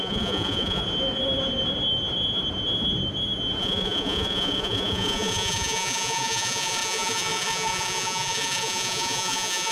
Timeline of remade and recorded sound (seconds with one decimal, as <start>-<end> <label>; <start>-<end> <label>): 0.0-0.8 remade; 0.8-3.6 recorded; 3.6-9.7 remade